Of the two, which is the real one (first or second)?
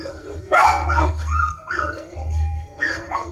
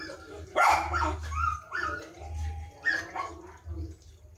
second